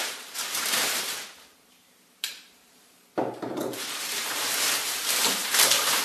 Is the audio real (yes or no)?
no